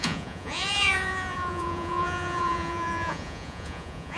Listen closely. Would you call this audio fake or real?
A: fake